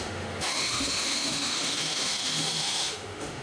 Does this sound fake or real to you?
fake